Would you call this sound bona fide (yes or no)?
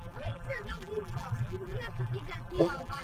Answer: no